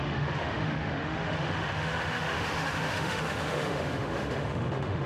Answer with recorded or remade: remade